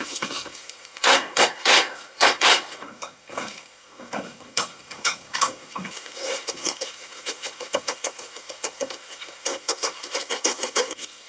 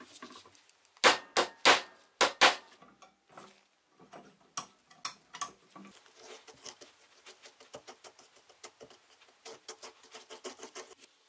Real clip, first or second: second